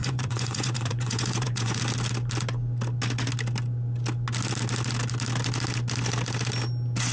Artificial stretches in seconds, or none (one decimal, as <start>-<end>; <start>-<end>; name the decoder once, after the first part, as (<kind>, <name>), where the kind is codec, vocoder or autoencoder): 0.0-1.8 (vocoder, Vocos)